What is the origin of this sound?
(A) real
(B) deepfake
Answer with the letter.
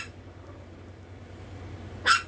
A